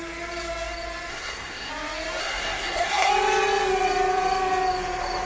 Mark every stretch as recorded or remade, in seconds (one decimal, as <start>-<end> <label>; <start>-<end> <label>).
0.0-1.1 recorded; 1.1-1.7 remade; 1.7-2.2 recorded; 2.2-3.1 remade; 3.1-5.3 recorded